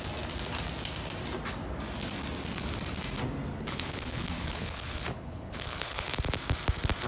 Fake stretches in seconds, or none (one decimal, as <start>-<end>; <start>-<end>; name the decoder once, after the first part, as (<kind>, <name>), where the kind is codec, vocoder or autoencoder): 3.5-6.1 (codec, HILCodec)